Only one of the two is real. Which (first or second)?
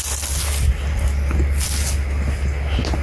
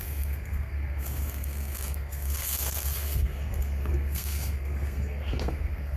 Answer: first